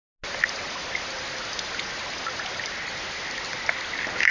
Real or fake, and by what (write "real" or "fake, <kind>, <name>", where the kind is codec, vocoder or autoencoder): real